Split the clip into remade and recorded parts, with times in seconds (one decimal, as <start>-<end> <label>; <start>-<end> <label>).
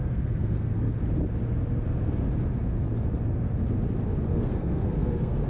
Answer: 0.0-1.0 remade; 1.0-4.3 recorded; 4.3-5.5 remade